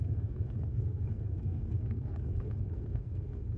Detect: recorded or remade remade